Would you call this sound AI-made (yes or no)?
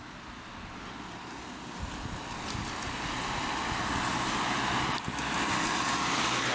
no